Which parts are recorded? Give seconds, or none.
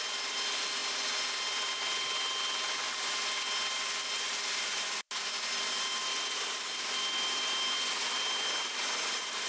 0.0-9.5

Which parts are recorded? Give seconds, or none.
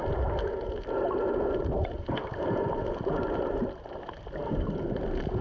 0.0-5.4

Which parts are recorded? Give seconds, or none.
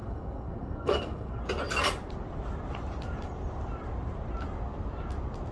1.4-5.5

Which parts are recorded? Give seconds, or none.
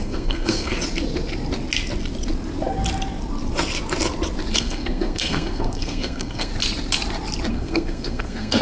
0.7-4.6; 6.5-7.5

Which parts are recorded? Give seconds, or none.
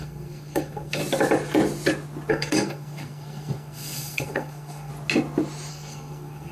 1.0-2.3; 4.9-5.7